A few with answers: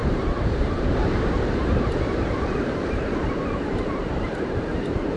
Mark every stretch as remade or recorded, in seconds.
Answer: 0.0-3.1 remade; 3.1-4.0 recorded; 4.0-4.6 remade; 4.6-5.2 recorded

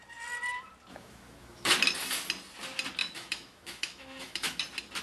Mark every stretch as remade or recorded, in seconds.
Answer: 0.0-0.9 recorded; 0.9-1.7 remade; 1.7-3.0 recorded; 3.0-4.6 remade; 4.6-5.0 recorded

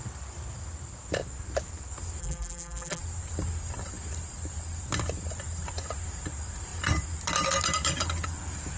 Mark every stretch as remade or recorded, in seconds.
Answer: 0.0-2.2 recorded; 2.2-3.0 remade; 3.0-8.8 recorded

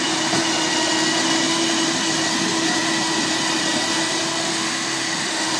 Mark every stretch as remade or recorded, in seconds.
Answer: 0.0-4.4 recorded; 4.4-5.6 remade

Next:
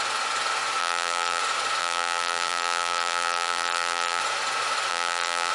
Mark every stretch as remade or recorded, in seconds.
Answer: 0.0-0.8 recorded; 0.8-1.4 remade; 1.4-1.8 recorded; 1.8-4.2 remade; 4.2-4.9 recorded; 4.9-5.5 remade

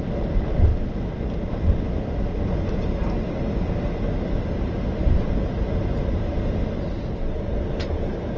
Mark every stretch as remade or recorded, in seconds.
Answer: 0.0-8.4 recorded